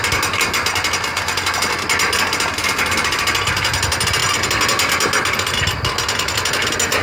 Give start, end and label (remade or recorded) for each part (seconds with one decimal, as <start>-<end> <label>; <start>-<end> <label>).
0.0-1.1 recorded; 1.1-1.7 remade; 1.7-7.0 recorded